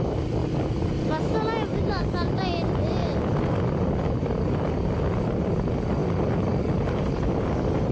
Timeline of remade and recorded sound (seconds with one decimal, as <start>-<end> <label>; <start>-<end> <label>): 0.0-7.9 recorded